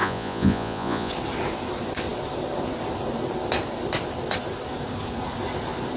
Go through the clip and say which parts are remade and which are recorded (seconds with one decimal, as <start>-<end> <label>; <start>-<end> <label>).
0.0-1.1 remade; 1.1-6.0 recorded